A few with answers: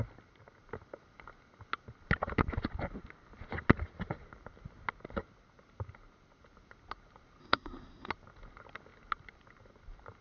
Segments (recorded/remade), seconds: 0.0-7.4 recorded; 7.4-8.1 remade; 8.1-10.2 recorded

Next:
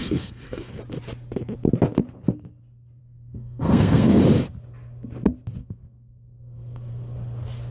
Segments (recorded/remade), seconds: 0.0-0.8 remade; 0.8-3.0 recorded; 3.0-4.2 remade; 4.2-5.6 recorded; 5.6-6.9 remade; 6.9-7.7 recorded

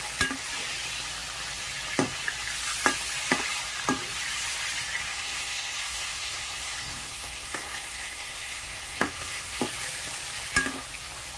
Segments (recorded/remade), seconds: 0.0-5.1 recorded; 5.1-9.6 remade; 9.6-11.4 recorded

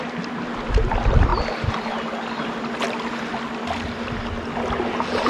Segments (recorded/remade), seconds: 0.0-5.3 recorded

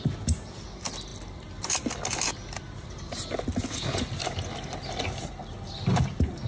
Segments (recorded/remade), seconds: 0.0-6.5 recorded

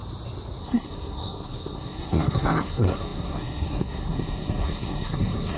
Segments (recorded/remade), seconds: 0.0-0.6 recorded; 0.6-5.6 remade

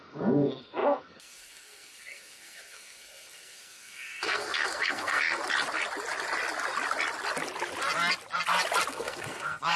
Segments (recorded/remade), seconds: 0.0-5.4 remade; 5.4-8.9 recorded; 8.9-9.8 remade

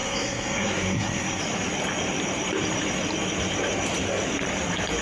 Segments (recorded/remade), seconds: 0.0-1.4 remade; 1.4-5.0 recorded